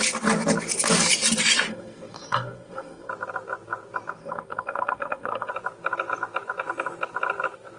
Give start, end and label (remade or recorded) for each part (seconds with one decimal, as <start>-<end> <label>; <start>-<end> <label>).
0.0-1.7 recorded; 1.7-3.1 remade; 3.1-4.2 recorded; 4.2-5.5 remade; 5.5-7.8 recorded